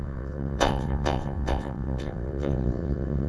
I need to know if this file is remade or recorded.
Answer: remade